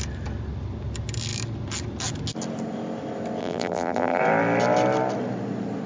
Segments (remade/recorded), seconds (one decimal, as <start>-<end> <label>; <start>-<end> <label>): 0.0-3.4 recorded; 3.4-4.2 remade; 4.2-5.9 recorded